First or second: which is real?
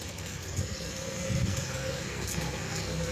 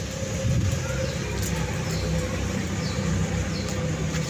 second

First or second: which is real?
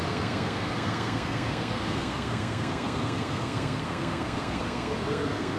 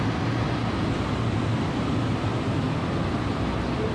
second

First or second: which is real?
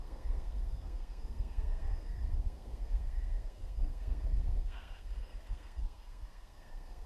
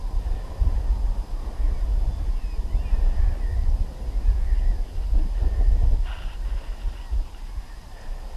second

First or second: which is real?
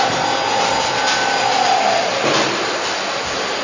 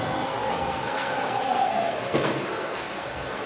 first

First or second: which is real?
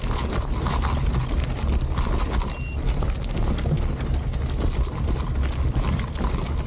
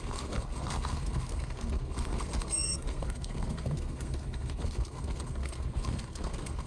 first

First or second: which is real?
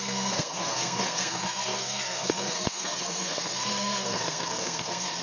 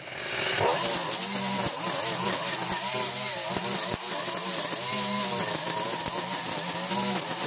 second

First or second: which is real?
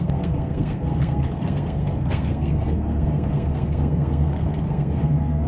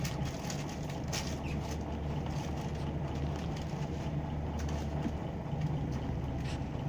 second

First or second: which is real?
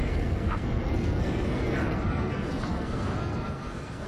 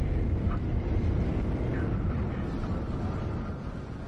second